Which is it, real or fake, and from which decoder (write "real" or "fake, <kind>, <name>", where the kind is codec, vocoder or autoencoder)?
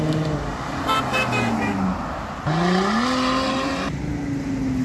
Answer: real